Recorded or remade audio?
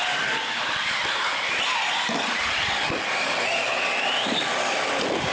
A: recorded